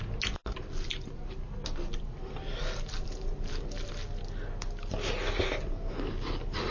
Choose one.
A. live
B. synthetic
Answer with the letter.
A